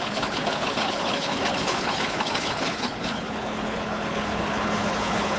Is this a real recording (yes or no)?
no